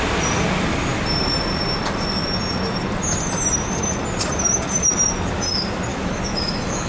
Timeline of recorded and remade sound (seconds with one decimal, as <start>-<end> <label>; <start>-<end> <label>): 0.0-5.9 recorded; 5.9-6.9 remade